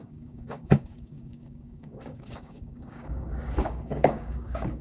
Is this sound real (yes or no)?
no